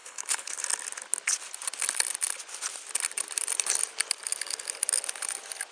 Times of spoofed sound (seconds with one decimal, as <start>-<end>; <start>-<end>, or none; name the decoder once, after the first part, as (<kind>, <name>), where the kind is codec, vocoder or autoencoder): 0.0-0.6 (codec, HILCodec)